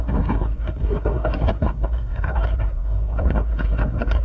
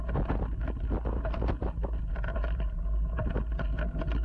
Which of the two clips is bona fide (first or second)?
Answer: second